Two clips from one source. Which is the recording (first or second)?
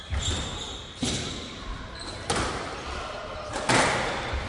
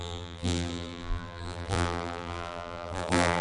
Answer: first